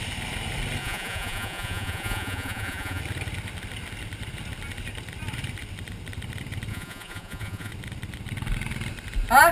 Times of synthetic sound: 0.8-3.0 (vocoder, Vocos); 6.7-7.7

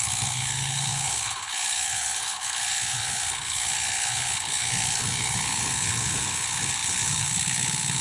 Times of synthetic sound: 0.0-8.0 (codec, HILCodec)